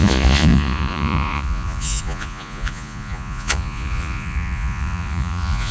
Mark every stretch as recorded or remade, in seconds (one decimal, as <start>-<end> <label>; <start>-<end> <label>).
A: 0.0-5.7 remade